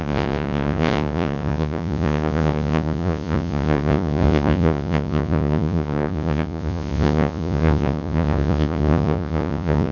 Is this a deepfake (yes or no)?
yes